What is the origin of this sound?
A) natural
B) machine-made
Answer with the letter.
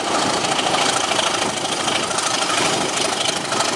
A